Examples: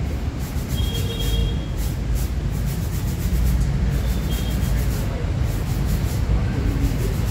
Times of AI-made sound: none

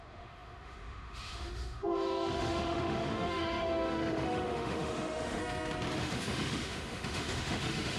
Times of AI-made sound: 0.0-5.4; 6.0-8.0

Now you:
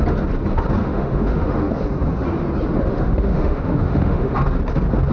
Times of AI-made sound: 0.8-1.7; 2.9-4.3

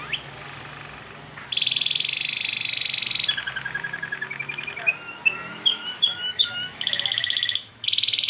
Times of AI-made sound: 5.5-8.3